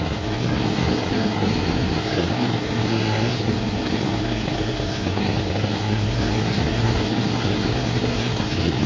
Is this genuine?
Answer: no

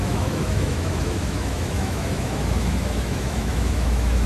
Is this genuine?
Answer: no